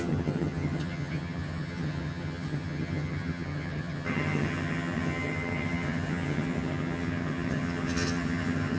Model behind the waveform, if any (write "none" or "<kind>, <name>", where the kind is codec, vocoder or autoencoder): vocoder, HiFi-GAN